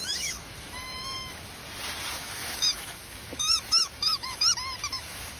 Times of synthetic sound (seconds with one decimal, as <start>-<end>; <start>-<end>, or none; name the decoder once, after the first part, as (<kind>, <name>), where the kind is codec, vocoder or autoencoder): 0.0-1.6 (autoencoder, DAC-VAE); 2.1-4.4; 4.9-5.4